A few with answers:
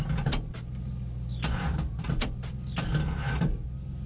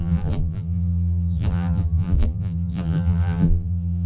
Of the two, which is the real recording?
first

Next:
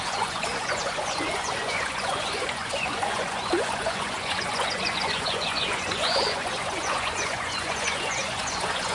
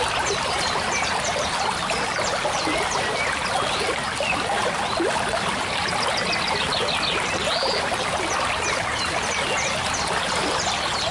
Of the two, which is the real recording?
second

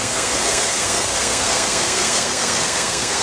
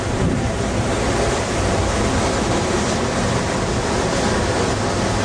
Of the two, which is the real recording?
second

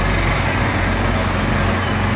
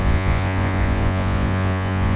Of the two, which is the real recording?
first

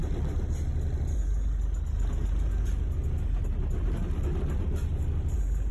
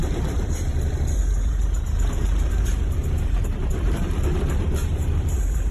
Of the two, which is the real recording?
first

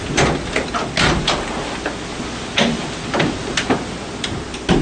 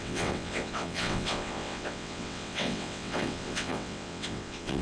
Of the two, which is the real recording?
first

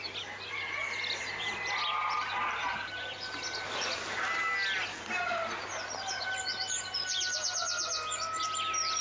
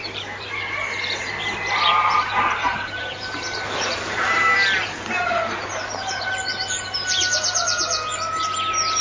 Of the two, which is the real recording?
first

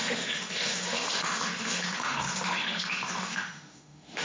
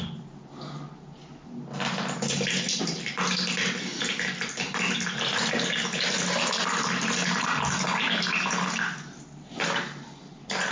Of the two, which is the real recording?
second